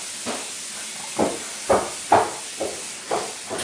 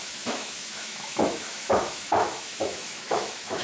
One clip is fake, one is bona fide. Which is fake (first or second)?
second